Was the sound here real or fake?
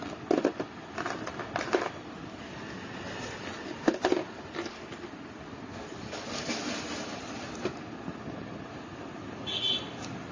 real